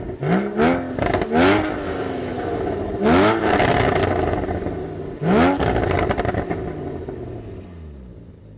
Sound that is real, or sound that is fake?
real